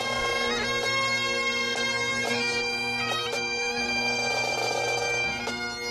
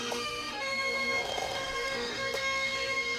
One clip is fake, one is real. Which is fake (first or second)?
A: second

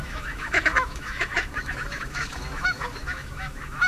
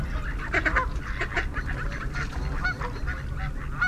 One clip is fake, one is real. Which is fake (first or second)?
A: first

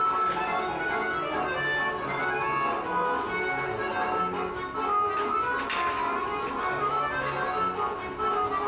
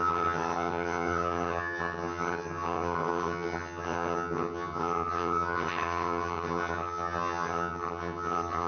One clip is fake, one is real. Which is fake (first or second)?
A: second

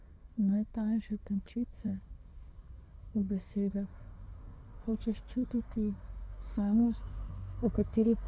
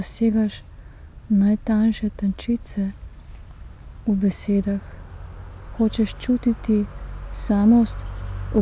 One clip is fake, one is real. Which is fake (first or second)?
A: first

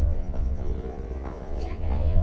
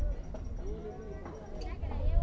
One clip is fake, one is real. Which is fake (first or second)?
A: first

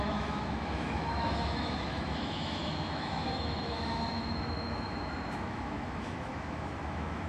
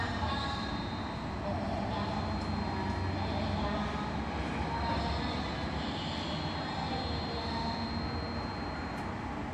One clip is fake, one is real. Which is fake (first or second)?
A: first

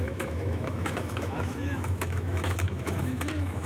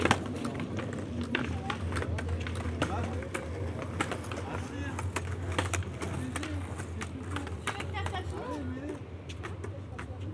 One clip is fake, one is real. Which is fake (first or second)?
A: first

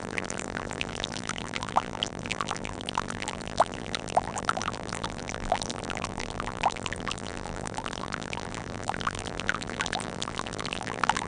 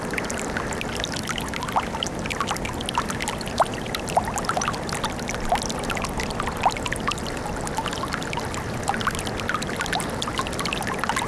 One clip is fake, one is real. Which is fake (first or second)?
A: first